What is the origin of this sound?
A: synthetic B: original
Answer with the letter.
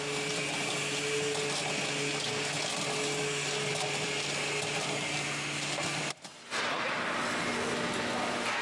B